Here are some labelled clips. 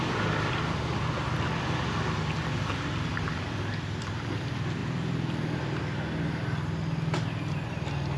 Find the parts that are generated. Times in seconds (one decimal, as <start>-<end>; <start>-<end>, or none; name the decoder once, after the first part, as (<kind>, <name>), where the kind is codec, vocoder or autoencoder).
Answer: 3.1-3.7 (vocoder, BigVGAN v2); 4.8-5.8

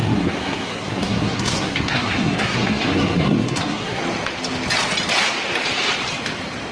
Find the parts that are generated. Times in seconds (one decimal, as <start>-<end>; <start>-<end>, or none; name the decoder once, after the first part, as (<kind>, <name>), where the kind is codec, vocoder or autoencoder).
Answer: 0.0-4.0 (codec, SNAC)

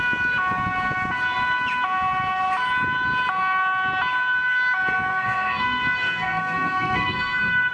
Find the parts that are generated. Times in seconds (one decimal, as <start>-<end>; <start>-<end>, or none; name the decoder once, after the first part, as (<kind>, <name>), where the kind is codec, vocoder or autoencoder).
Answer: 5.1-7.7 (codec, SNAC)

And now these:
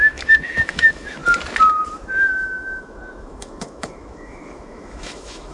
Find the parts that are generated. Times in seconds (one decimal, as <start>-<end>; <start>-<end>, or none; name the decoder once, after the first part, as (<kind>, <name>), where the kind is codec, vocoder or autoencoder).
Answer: 0.0-1.2 (autoencoder, DAC-VAE); 2.2-5.5